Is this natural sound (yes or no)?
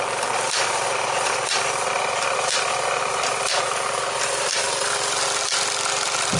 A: yes